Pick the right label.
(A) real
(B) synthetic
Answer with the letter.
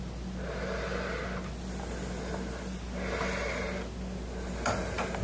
A